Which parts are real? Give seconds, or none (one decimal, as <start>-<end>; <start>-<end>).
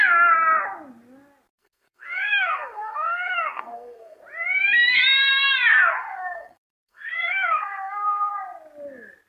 0.0-1.5; 4.2-5.9; 8.3-9.3